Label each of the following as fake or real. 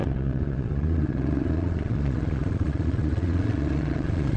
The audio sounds fake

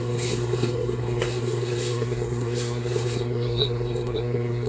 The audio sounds fake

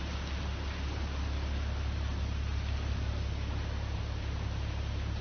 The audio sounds real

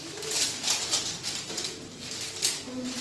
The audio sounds real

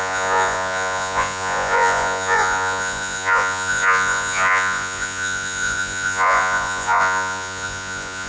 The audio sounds fake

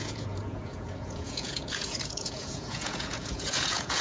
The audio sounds fake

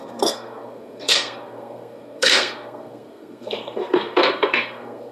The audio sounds fake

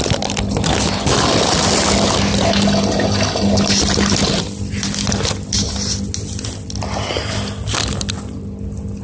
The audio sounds real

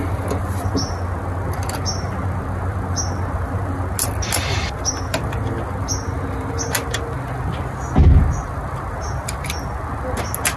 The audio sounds real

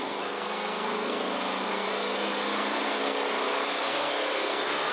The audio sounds fake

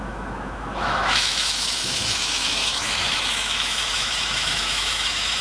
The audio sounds fake